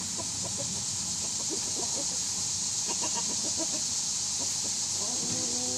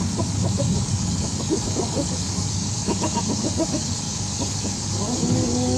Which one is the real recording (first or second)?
first